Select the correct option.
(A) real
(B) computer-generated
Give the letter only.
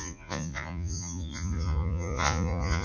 B